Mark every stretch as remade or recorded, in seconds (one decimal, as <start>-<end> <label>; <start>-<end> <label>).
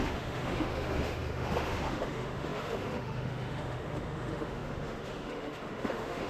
0.0-6.3 remade